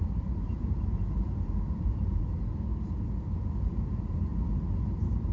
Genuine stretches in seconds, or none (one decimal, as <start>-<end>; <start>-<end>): 2.2-3.6; 4.3-4.8